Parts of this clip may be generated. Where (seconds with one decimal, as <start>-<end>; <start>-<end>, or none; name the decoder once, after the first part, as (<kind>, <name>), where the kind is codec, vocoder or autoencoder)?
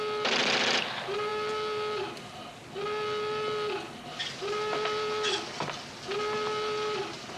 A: none